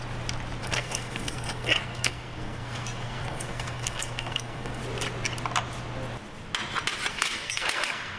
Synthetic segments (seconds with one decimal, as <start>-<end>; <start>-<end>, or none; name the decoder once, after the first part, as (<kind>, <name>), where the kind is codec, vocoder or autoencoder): 0.6-4.8 (codec, SNAC); 7.1-8.2